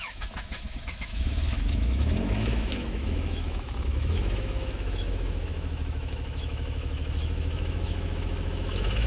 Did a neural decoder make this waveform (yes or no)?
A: yes